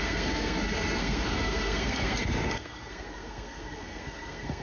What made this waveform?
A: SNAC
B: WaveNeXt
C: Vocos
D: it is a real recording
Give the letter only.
A